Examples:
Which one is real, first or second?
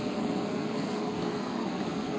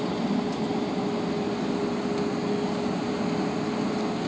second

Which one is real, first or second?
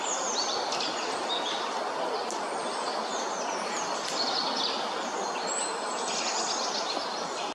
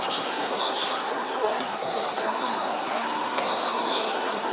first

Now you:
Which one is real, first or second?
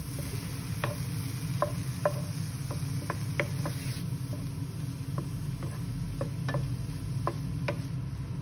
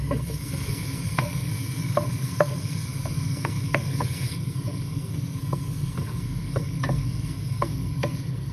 first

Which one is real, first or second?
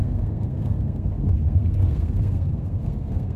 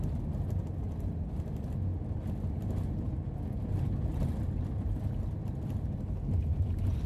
second